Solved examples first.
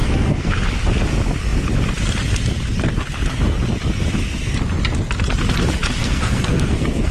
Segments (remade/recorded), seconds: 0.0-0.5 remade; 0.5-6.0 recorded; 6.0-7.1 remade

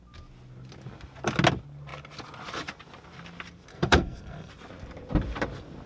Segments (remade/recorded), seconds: 0.0-3.7 recorded; 3.7-4.5 remade; 4.5-5.9 recorded